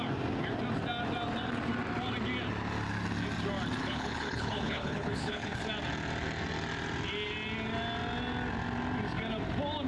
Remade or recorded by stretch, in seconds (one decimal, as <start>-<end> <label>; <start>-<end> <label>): 0.0-3.8 recorded; 3.8-5.6 remade; 5.6-9.9 recorded